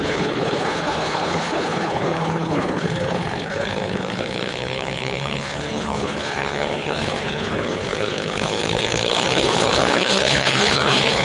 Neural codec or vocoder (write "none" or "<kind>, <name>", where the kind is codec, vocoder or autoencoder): codec, HILCodec